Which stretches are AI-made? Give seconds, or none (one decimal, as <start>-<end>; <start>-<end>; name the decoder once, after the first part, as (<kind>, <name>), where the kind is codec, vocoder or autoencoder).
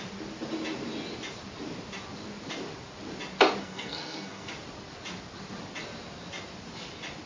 3.6-4.5 (codec, SNAC)